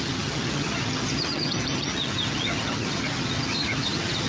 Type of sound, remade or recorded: remade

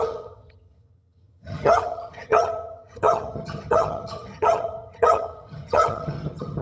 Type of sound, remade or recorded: remade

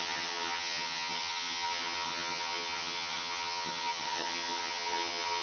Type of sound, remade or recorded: remade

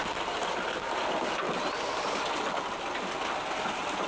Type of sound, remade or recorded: recorded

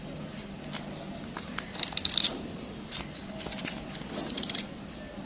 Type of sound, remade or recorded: recorded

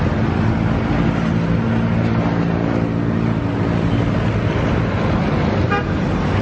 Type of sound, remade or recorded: recorded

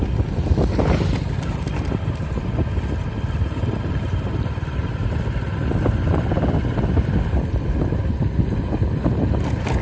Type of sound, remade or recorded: recorded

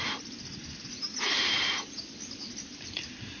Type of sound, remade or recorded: recorded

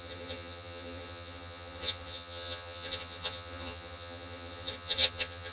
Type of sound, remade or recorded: remade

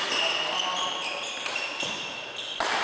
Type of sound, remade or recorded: recorded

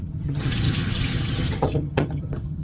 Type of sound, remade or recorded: remade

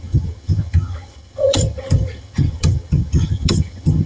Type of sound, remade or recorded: remade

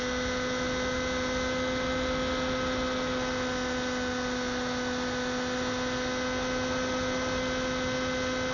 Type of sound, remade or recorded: recorded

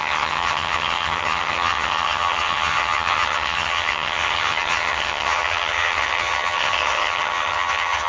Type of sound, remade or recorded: remade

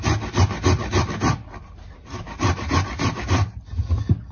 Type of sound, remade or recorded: recorded